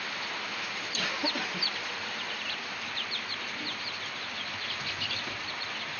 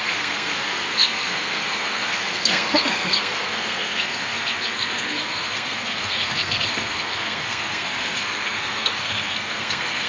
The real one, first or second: first